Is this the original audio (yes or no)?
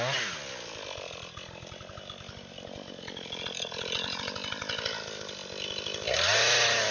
yes